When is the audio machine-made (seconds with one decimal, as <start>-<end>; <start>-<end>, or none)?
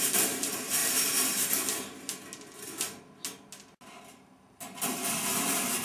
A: none